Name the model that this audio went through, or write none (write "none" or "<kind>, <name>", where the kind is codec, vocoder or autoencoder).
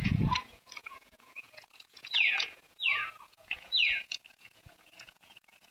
vocoder, Vocos